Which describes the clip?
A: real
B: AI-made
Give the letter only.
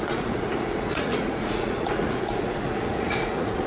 B